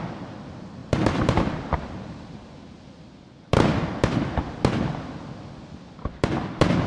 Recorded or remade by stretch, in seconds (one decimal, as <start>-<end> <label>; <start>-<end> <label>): 0.0-0.8 recorded; 0.8-1.5 remade; 1.5-6.9 recorded